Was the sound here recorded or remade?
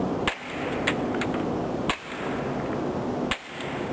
recorded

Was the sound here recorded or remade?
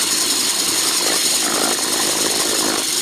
recorded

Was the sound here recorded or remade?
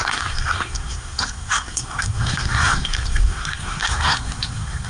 remade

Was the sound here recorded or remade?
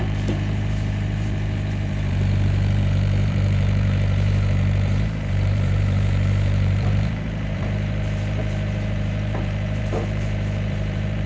remade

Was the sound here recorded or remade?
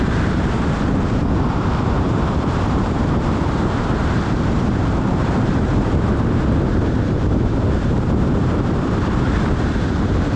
remade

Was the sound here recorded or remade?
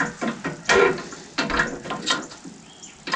recorded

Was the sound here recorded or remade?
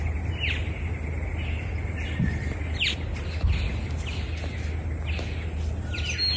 recorded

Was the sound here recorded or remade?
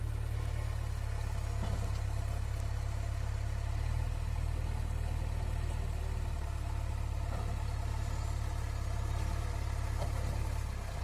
recorded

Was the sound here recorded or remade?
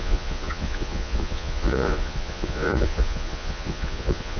remade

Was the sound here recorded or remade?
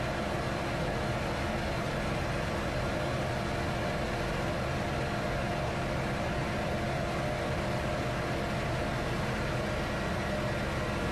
recorded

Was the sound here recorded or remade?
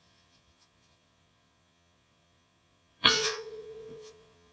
remade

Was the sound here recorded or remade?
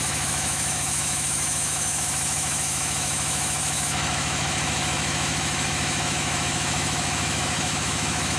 remade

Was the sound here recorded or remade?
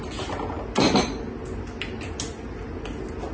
recorded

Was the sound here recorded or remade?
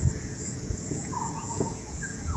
remade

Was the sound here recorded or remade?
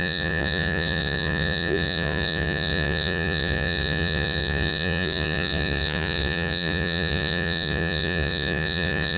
remade